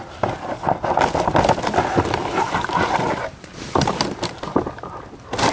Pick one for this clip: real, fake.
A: real